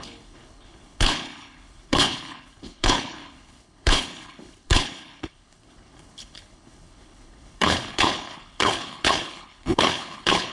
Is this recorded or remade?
remade